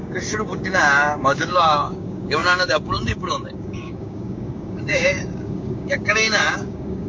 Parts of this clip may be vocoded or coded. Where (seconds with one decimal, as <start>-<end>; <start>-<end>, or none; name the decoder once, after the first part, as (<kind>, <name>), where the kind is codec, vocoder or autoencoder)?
0.0-7.1 (codec, DAC)